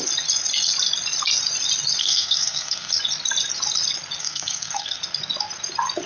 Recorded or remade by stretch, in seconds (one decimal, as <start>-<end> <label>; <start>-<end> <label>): 0.0-2.0 recorded; 2.0-2.9 remade; 2.9-4.2 recorded; 4.2-5.0 remade; 5.0-6.1 recorded

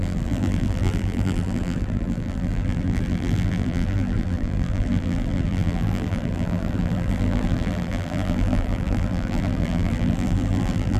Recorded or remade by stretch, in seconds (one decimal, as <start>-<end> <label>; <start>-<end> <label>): 0.0-11.0 remade